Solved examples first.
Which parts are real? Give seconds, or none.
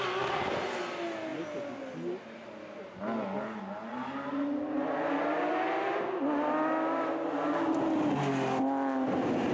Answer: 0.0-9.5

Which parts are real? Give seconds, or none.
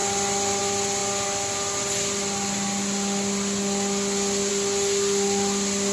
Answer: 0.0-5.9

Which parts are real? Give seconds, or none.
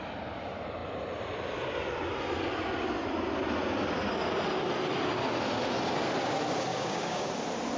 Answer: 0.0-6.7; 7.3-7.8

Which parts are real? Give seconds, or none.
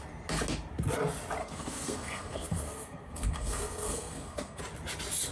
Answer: 0.0-1.4; 4.6-5.3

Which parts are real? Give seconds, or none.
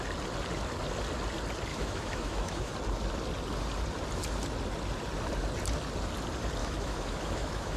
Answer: 0.0-1.7; 2.7-6.6